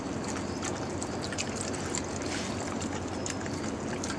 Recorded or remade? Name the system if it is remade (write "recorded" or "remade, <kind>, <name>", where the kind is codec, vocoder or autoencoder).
recorded